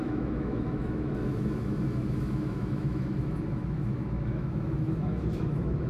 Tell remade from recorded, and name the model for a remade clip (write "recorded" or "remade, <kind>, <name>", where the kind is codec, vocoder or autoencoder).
remade, autoencoder, DAC-VAE